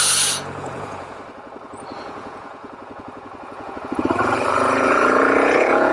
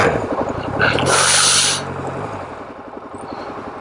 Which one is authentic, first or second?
second